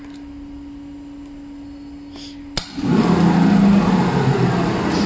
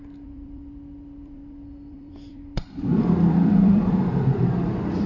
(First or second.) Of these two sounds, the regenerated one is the second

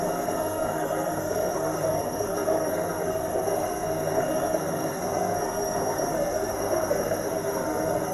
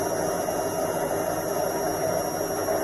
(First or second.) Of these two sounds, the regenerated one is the first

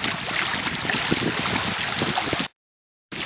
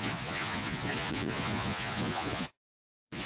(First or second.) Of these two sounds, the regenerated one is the second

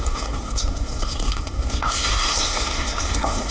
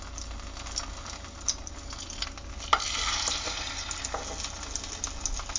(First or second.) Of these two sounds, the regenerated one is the first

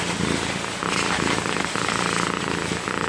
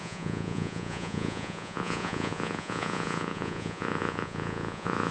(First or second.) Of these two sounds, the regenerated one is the second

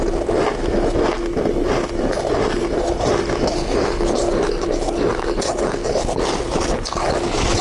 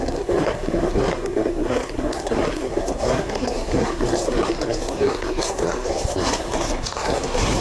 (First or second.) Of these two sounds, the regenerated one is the second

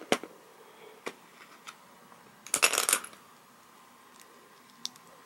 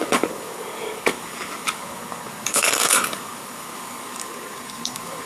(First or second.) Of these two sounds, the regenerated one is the second